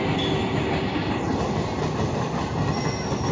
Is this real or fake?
real